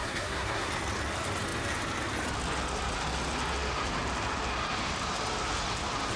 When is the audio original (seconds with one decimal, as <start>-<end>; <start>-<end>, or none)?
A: 0.7-6.2